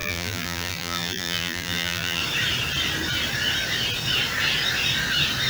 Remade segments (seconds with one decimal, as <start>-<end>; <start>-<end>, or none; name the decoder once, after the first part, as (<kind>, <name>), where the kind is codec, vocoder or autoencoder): 0.0-2.2 (vocoder, BigVGAN v2)